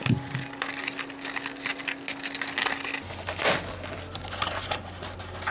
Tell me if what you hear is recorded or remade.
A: recorded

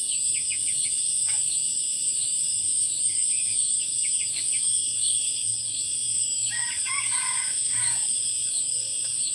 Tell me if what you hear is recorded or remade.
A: remade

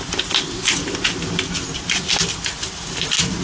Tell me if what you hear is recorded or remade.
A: recorded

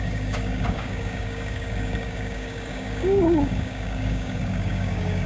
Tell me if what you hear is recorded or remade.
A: remade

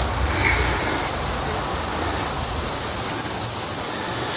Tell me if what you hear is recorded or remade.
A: recorded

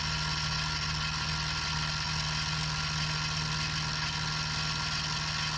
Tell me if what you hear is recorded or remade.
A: recorded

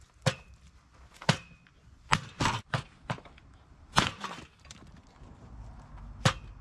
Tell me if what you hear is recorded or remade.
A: recorded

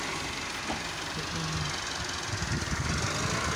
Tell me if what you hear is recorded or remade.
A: recorded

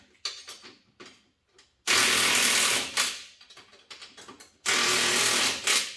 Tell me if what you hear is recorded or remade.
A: recorded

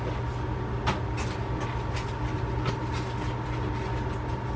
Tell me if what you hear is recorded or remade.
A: recorded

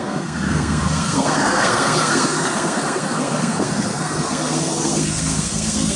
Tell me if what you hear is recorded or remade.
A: remade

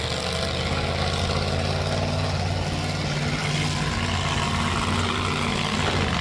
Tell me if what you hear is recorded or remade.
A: recorded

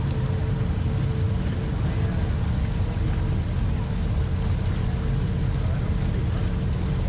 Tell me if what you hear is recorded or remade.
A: recorded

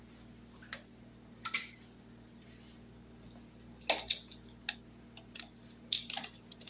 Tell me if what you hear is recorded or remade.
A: recorded